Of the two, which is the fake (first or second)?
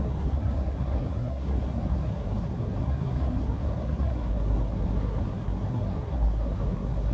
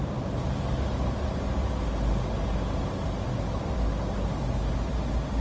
first